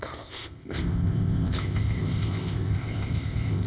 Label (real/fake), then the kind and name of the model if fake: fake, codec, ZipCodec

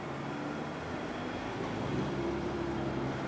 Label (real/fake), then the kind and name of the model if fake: real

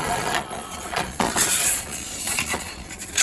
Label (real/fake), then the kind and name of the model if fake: fake, vocoder, Vocos